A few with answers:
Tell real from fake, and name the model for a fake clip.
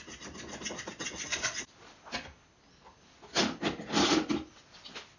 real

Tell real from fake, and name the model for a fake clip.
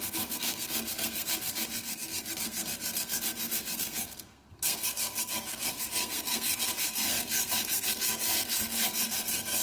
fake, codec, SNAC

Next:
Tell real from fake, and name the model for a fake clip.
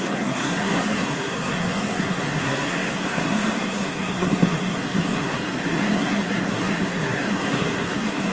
fake, codec, SNAC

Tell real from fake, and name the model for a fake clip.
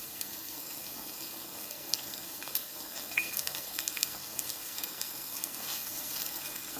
fake, codec, SNAC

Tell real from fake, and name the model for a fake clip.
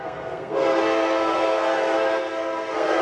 fake, codec, SNAC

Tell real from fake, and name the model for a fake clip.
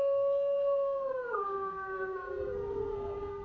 fake, codec, SNAC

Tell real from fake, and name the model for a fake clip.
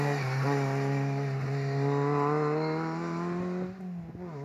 real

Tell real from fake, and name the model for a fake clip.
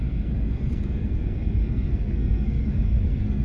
fake, codec, SNAC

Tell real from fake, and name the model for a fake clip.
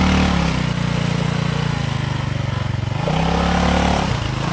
real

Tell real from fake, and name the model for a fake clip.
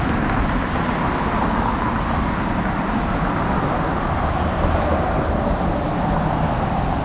real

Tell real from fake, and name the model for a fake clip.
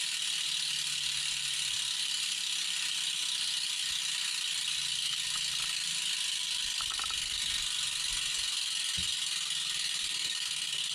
real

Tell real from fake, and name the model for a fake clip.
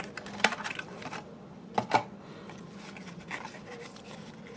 real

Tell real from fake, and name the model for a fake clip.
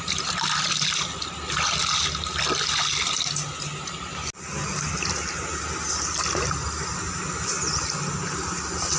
real